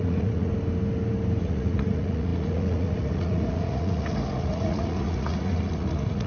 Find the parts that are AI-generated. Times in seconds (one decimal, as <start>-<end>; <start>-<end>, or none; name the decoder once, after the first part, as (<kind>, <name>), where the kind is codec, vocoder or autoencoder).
0.0-0.5 (vocoder, Vocos); 1.4-6.3